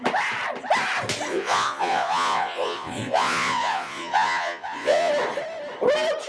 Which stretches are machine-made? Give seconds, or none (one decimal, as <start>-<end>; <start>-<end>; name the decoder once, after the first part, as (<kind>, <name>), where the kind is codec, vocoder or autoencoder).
1.3-5.1 (vocoder, Vocos)